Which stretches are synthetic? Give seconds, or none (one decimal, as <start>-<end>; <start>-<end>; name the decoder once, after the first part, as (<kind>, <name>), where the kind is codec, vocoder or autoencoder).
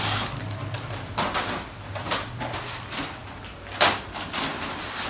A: none